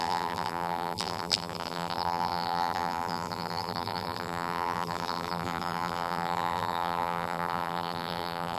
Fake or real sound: fake